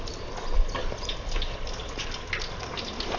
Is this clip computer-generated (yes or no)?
no